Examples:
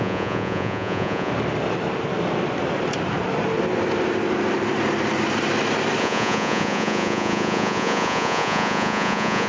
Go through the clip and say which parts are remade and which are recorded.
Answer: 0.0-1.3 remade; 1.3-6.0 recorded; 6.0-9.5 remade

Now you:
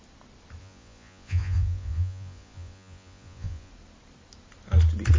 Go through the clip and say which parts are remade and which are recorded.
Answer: 0.0-0.6 recorded; 0.6-3.7 remade; 3.7-5.2 recorded

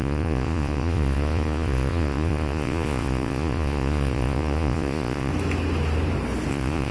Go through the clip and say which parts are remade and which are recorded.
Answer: 0.0-5.3 remade; 5.3-6.5 recorded; 6.5-6.9 remade

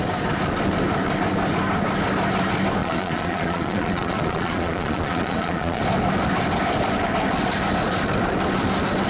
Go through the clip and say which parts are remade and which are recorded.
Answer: 0.0-2.8 recorded; 2.8-5.8 remade; 5.8-9.1 recorded

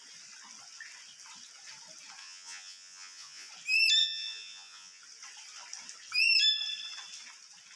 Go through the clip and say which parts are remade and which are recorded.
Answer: 0.0-2.2 recorded; 2.2-3.5 remade; 3.5-4.0 recorded; 4.0-5.0 remade; 5.0-7.8 recorded